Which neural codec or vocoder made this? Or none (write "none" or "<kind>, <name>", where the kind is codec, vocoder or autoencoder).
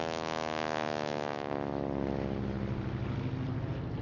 none